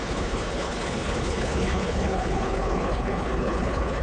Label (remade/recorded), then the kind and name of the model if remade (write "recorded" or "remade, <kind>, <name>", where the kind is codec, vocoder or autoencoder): remade, codec, HILCodec